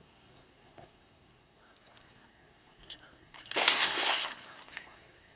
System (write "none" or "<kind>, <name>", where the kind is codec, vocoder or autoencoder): codec, SNAC